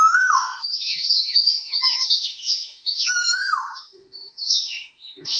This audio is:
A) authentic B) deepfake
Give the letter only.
B